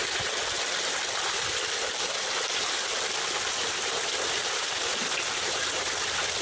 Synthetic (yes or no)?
no